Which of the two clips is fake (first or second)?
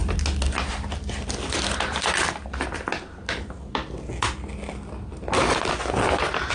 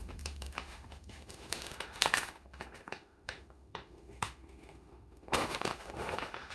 second